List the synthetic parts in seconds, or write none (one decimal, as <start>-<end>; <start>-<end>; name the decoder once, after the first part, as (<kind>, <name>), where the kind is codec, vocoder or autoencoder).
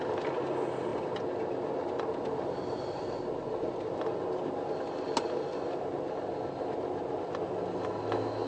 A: none